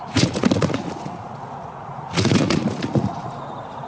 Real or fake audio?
fake